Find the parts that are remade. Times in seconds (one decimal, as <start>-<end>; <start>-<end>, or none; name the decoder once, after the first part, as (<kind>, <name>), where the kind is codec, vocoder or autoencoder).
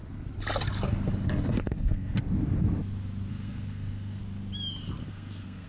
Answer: 1.5-2.2 (codec, SNAC); 3.3-4.2; 5.0-5.7